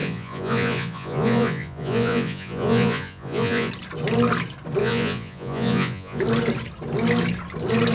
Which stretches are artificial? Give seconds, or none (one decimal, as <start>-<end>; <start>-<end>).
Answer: 0.0-3.7; 4.8-6.2